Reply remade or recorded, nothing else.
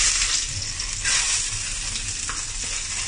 recorded